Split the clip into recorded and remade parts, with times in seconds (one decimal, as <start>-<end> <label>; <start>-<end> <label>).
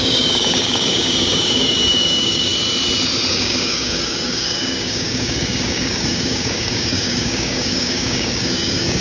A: 0.0-2.5 remade; 2.5-3.3 recorded; 3.3-9.0 remade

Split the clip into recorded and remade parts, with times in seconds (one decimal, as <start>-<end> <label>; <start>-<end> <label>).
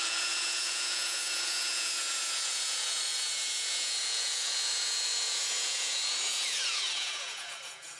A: 0.0-8.0 remade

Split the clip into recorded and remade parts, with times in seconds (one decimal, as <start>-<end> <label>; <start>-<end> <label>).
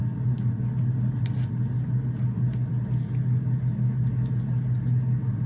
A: 0.0-5.5 recorded